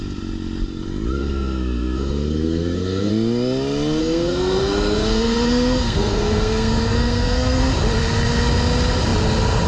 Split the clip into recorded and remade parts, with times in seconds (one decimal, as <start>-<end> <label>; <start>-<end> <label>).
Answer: 0.0-1.2 recorded; 1.2-3.1 remade; 3.1-4.0 recorded; 4.0-7.6 remade; 7.6-9.7 recorded